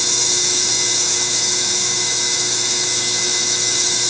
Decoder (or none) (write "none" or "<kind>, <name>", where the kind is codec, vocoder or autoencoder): autoencoder, DAC-VAE